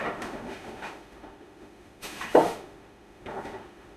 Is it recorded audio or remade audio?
remade